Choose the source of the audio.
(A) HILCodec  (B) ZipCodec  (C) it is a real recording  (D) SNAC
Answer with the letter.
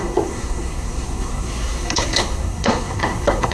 D